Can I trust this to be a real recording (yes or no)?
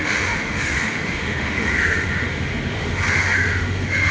no